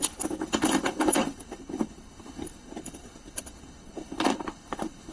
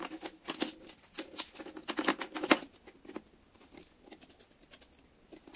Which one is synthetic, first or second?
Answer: first